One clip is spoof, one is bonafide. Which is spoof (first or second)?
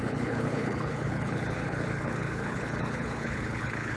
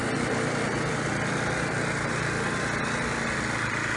first